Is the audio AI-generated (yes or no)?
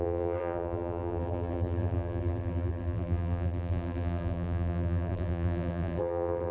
yes